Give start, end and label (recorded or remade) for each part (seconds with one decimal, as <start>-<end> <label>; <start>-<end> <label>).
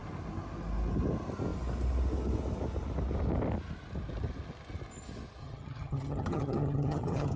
0.0-5.4 recorded; 5.4-7.4 remade